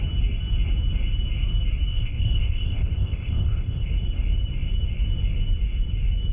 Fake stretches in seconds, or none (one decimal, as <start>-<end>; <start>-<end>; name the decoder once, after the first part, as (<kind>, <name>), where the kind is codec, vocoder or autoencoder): 1.9-3.9 (codec, ZipCodec)